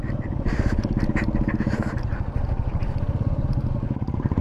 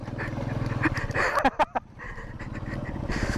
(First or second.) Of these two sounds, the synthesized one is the first